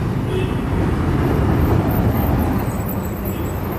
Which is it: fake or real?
real